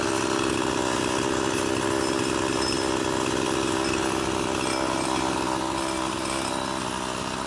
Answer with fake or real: real